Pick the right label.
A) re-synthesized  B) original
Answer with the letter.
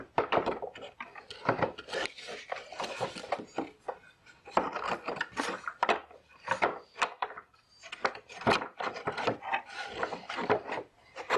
A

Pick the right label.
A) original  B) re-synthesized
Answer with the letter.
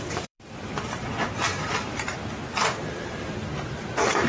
B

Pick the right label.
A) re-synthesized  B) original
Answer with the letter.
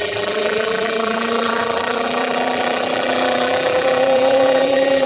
A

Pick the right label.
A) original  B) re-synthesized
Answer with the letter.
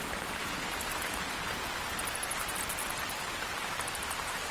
B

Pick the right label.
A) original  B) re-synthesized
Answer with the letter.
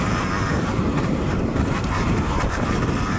B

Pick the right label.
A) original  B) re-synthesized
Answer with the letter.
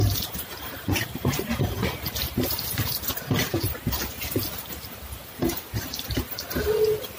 A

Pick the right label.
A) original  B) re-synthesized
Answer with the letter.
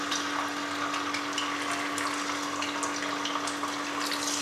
A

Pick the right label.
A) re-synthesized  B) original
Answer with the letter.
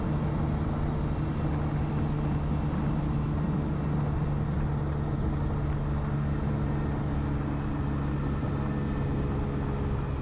B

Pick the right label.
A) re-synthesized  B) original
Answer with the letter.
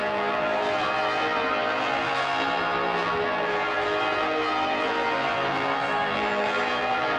A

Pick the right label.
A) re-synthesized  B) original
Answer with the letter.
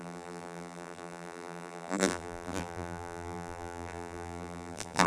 A